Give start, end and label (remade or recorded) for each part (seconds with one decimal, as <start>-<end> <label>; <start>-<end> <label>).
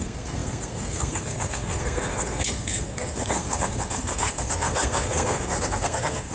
0.0-6.3 remade